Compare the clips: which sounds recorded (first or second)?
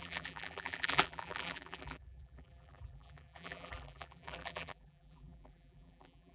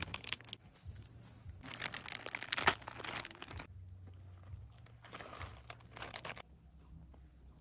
second